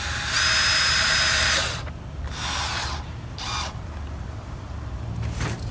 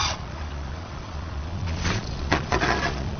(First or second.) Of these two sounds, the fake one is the second